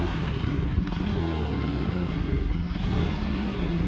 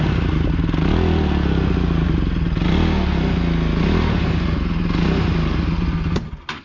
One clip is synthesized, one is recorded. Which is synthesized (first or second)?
first